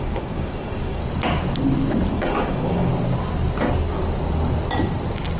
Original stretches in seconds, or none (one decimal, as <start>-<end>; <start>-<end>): 1.0-2.1; 2.9-5.4